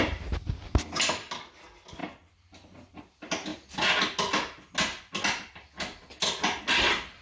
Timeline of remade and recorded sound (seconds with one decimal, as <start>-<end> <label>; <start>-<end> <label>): 0.0-7.2 recorded